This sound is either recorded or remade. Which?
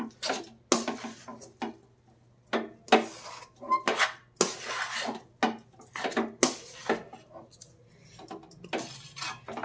recorded